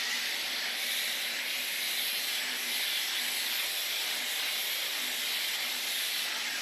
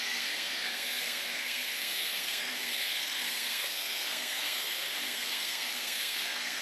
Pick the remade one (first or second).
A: second